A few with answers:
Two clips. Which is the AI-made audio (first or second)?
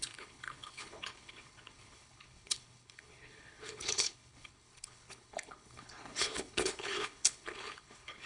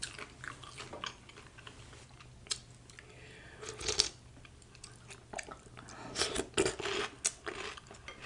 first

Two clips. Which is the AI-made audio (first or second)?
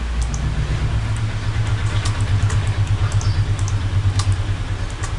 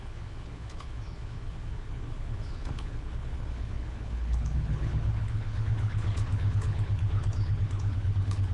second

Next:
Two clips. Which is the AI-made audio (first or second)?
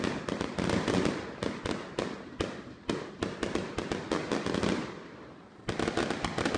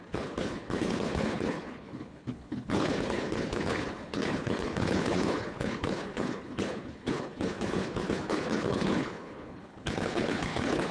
second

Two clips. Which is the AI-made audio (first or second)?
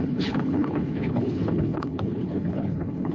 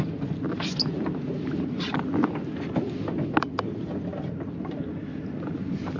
first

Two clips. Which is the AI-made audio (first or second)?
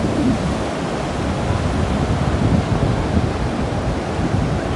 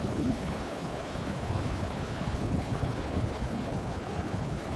second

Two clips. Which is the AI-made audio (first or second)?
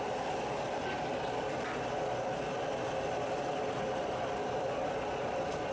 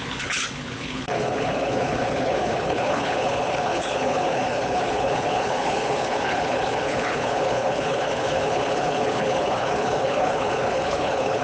second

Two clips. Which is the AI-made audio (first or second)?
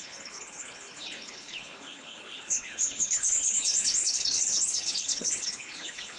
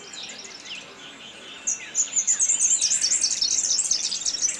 first